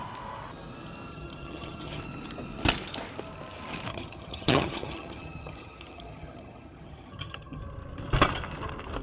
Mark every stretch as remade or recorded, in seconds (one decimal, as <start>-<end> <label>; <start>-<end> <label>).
0.0-1.1 recorded; 1.1-2.0 remade; 2.0-3.9 recorded; 3.9-7.6 remade; 7.6-9.0 recorded